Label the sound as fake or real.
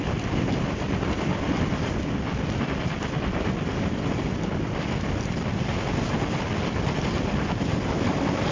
fake